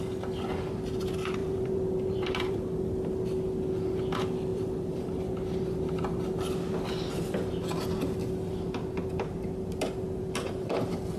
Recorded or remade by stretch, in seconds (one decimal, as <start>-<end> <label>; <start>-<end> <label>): 0.0-1.4 recorded; 1.4-2.6 remade; 2.6-4.5 recorded; 4.5-6.0 remade; 6.0-11.2 recorded